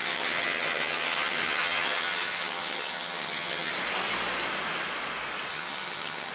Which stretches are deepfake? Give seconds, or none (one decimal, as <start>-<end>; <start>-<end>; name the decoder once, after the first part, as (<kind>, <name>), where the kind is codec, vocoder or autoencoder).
0.0-3.7 (vocoder, HiFi-GAN); 5.5-6.3